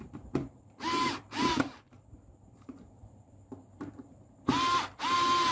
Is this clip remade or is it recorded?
remade